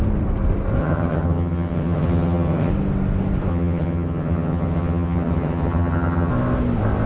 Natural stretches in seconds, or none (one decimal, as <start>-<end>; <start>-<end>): 0.0-0.8; 2.7-3.5; 6.3-7.1